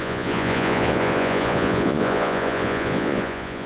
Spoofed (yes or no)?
yes